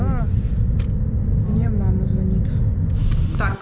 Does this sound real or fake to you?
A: real